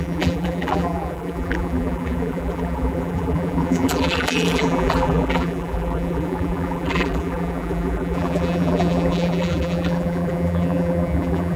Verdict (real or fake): fake